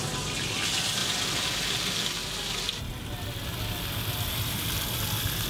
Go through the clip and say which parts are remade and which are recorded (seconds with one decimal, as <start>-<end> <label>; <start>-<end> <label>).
0.0-5.5 recorded